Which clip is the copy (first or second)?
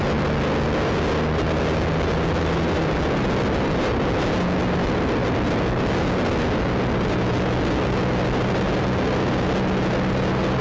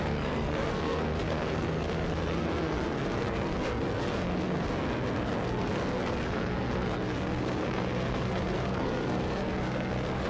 second